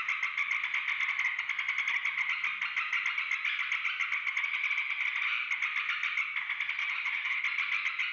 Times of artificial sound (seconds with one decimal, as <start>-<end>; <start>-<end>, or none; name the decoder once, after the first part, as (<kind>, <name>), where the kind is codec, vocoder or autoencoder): 6.8-7.4 (vocoder, HiFi-GAN)